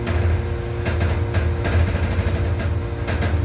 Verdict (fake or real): real